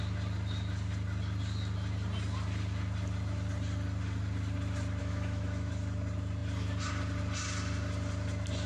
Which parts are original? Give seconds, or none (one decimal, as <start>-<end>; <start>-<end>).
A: 0.0-5.0; 5.7-8.7